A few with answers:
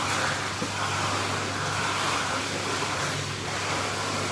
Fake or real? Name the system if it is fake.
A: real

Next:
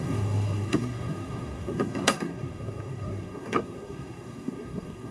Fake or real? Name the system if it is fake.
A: fake, codec, SNAC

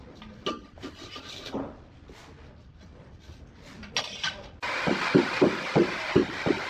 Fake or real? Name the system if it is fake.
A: real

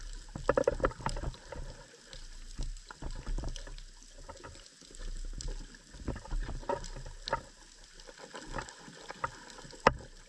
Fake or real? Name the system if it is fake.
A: real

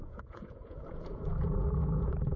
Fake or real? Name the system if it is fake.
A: fake, vocoder, Vocos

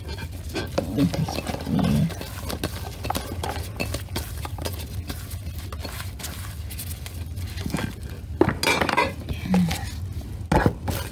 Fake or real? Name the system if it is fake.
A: real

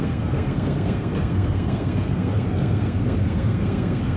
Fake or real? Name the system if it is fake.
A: fake, codec, SNAC